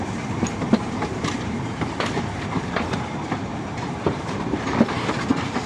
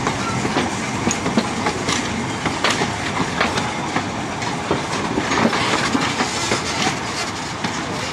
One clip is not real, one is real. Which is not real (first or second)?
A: first